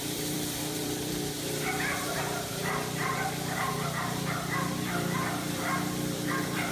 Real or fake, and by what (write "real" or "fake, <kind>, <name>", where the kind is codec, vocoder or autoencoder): fake, vocoder, BigVGAN v2